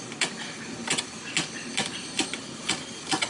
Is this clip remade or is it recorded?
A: recorded